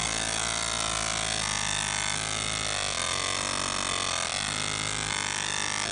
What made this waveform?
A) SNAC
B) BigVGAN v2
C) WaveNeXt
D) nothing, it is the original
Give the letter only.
D